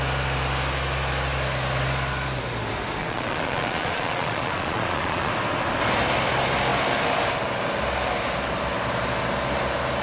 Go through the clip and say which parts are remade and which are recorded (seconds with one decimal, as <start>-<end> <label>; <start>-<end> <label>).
0.0-3.0 recorded; 3.0-5.3 remade; 5.3-10.0 recorded